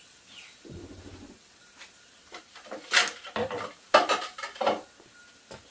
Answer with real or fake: real